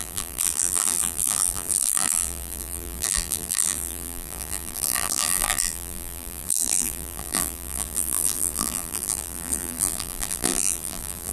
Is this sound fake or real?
fake